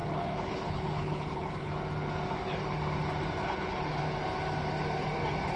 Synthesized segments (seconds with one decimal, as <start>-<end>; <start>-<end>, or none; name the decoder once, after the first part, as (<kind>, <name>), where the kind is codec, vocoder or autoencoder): 0.0-1.7 (codec, HILCodec); 3.4-4.0